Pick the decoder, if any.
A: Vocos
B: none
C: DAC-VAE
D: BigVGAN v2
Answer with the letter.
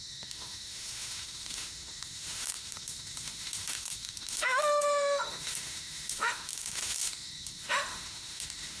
C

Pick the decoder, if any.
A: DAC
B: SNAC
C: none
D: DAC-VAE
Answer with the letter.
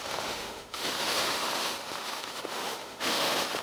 D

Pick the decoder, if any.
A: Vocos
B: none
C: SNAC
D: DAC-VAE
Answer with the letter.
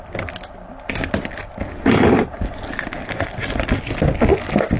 B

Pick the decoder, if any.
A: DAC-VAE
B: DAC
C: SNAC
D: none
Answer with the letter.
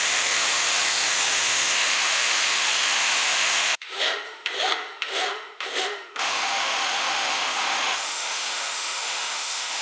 A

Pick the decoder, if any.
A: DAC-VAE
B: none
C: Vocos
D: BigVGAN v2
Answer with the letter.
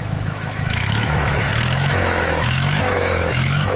A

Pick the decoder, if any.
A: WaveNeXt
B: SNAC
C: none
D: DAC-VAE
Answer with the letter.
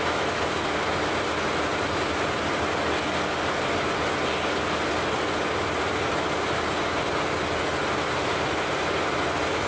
C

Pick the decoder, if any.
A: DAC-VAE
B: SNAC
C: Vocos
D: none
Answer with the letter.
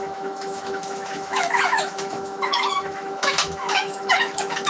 A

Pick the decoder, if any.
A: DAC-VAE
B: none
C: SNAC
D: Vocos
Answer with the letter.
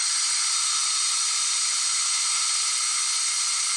B